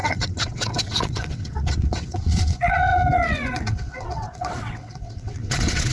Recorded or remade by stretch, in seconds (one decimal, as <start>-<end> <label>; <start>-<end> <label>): 0.0-5.9 remade